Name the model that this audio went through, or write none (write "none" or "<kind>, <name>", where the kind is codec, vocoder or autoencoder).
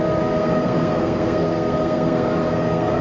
codec, SNAC